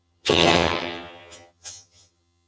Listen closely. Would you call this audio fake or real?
fake